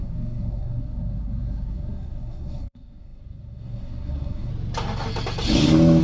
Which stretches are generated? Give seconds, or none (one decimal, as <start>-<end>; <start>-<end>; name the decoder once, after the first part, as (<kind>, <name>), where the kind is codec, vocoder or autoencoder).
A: 0.0-4.5 (codec, SNAC)